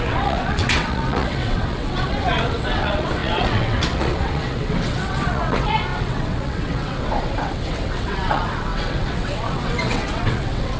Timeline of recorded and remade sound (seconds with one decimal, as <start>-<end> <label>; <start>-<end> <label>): 0.0-10.8 remade